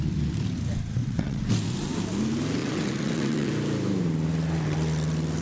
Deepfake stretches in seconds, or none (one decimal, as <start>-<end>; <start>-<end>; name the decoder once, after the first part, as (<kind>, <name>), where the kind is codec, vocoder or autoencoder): 1.0-1.5 (vocoder, WaveNeXt); 2.6-3.5